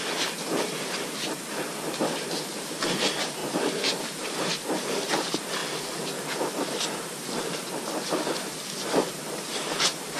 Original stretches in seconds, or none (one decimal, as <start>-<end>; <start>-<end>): 5.6-7.9